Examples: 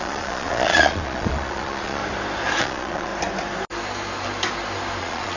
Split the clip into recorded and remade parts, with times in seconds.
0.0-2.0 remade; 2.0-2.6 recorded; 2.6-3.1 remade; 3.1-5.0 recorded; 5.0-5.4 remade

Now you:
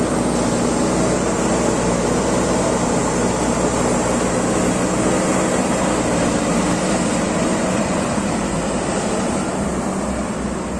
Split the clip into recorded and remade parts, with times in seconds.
0.0-7.5 recorded; 7.5-8.1 remade; 8.1-10.8 recorded

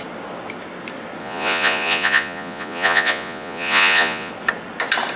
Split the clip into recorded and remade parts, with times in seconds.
0.0-1.2 recorded; 1.2-4.3 remade; 4.3-5.2 recorded

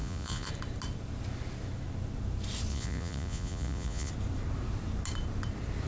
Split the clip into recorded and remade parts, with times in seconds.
0.0-0.5 remade; 0.5-2.7 recorded; 2.7-4.1 remade; 4.1-5.9 recorded

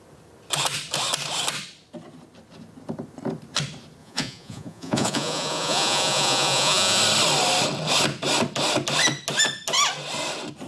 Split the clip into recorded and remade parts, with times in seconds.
0.0-4.0 recorded; 4.0-7.0 remade; 7.0-10.7 recorded

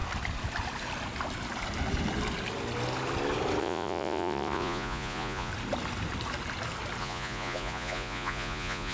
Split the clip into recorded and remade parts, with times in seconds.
0.0-3.6 recorded; 3.6-5.5 remade; 5.5-7.0 recorded; 7.0-8.9 remade

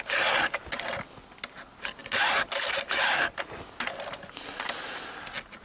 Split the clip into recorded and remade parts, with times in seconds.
0.0-5.6 recorded